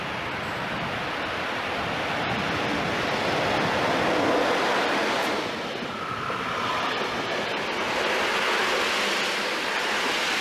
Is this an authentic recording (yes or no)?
yes